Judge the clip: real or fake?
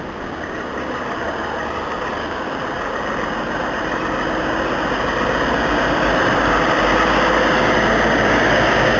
real